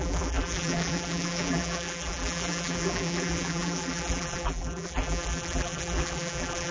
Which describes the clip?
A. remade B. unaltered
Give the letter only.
A